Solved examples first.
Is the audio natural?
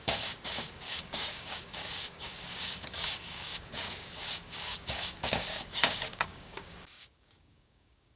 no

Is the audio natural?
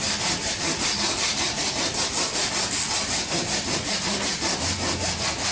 yes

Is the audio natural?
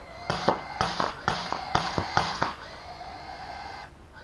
no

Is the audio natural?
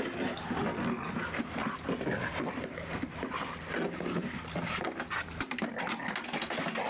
yes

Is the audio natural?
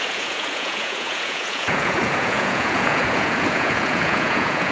no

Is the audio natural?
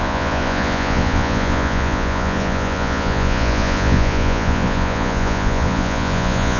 no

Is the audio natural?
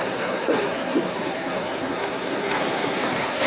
no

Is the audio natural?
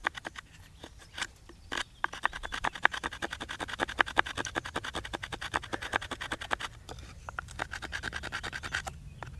yes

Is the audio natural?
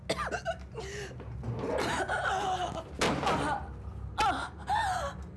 yes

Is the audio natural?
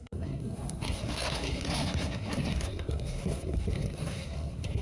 no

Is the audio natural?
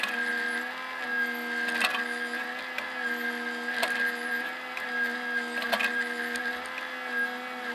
yes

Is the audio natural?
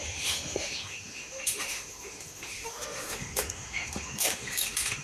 no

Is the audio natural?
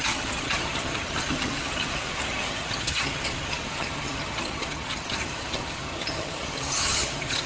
no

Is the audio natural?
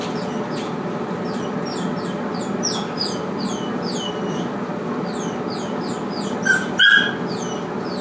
yes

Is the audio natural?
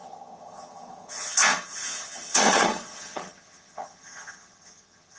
no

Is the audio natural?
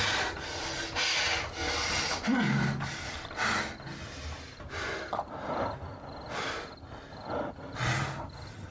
yes